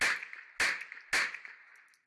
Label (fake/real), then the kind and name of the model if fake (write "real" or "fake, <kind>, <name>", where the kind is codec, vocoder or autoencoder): real